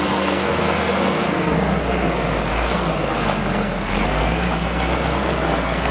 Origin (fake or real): fake